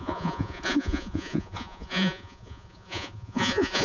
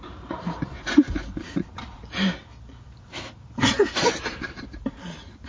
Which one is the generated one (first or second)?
first